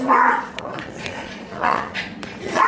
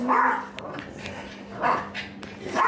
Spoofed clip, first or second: first